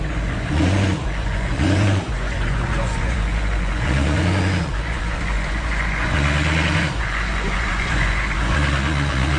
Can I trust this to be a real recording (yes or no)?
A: no